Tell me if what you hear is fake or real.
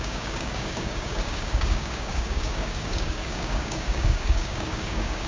fake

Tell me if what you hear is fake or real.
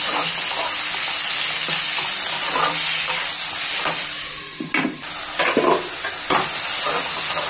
real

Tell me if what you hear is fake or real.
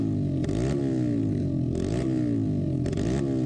real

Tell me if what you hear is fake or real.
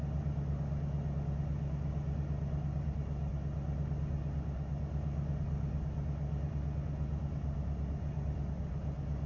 real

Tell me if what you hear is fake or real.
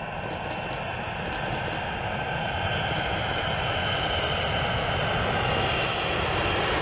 real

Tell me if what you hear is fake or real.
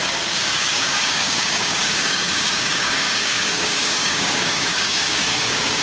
fake